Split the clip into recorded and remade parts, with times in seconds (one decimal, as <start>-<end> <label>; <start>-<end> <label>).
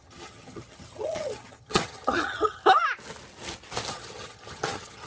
0.0-2.6 remade; 2.6-3.9 recorded; 3.9-5.1 remade